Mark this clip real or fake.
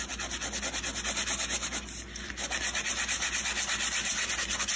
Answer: real